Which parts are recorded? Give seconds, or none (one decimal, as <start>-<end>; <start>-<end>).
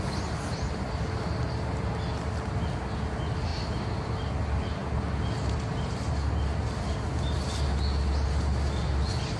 0.0-9.4